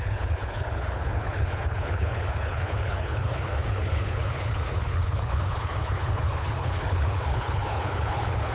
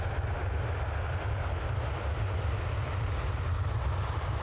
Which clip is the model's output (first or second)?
first